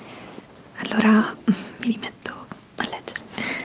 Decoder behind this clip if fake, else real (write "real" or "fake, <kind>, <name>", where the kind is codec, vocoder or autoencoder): real